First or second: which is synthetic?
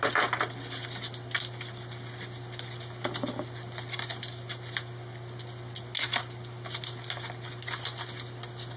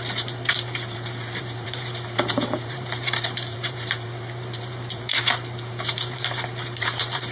second